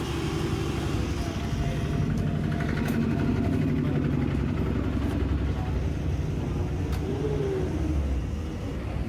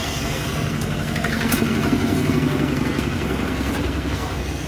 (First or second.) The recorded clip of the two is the first